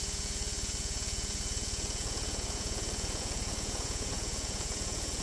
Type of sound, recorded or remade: remade